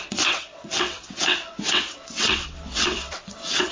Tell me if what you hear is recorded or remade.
remade